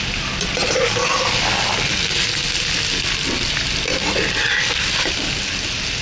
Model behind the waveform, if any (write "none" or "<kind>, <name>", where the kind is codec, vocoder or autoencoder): none